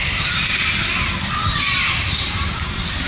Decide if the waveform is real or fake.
real